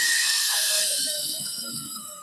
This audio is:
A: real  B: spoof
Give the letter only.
B